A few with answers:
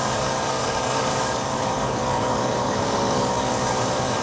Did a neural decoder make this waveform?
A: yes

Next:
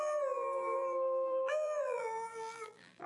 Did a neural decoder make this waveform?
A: yes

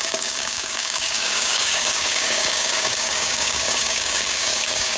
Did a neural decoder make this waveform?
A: yes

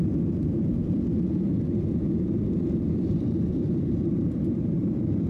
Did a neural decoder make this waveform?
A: yes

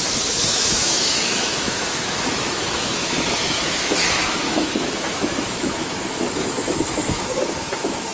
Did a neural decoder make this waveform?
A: yes